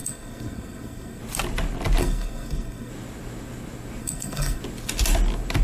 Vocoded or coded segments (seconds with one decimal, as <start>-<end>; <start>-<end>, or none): 0.0-1.2; 2.0-2.9; 4.0-4.6